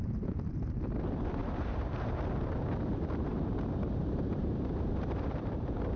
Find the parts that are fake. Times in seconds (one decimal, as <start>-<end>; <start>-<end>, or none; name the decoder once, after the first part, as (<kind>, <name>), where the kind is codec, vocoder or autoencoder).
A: 1.4-2.1 (vocoder, BigVGAN v2); 3.3-6.0